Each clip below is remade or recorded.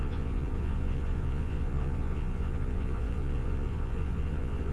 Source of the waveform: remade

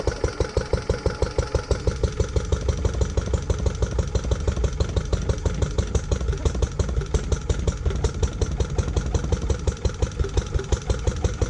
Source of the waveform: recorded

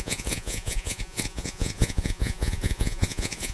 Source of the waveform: remade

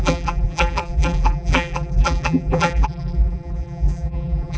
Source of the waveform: remade